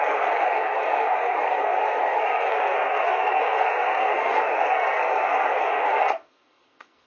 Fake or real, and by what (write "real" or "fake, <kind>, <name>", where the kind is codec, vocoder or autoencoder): fake, codec, SNAC